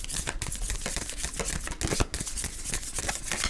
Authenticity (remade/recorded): recorded